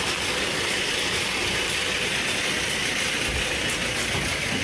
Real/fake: real